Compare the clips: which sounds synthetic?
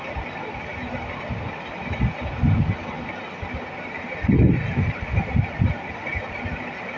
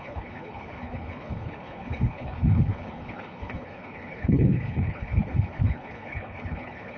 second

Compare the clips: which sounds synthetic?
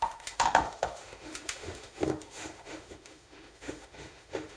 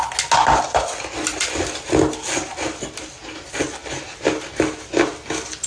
first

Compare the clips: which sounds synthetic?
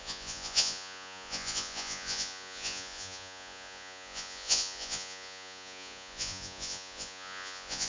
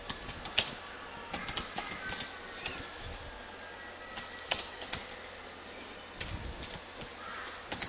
first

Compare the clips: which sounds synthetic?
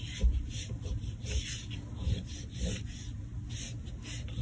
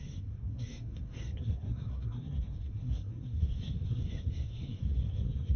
second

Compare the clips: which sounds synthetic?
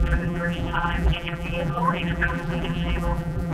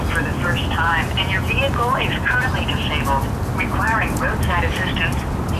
first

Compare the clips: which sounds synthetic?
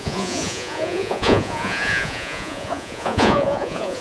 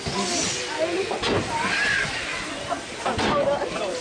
first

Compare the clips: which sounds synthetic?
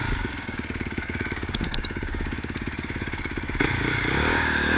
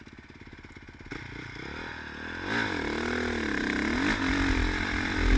first